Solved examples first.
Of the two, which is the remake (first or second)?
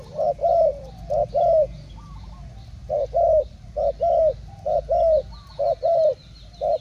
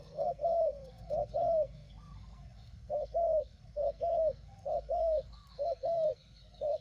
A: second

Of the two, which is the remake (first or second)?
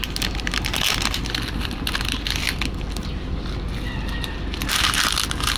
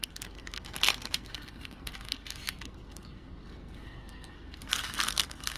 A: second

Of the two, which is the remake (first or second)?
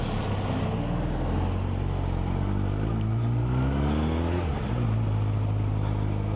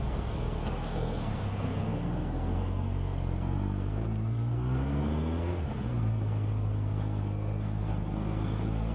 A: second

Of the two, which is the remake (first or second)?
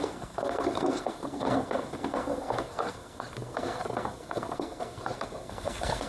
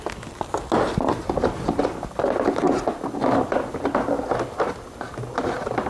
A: first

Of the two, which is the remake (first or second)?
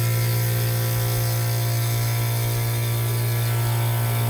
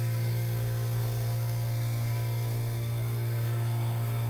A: second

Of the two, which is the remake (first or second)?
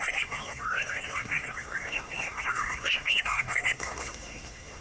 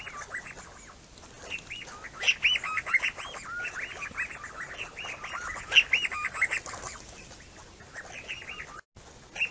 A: first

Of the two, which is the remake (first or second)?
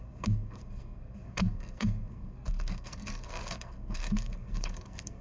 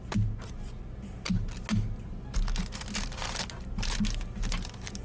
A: first